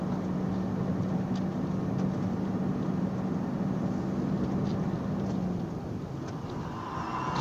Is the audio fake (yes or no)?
no